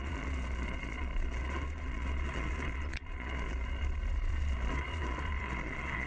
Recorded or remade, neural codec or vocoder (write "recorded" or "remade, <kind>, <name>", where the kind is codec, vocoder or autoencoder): remade, vocoder, Vocos